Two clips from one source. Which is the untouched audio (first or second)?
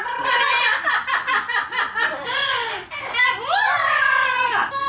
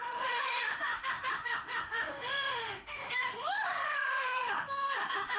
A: first